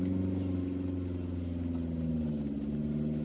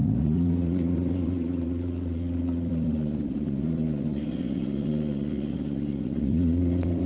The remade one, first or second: second